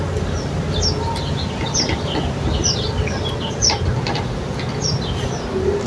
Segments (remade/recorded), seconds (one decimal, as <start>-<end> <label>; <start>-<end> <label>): 0.0-5.9 recorded